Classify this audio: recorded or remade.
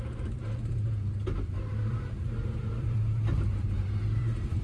remade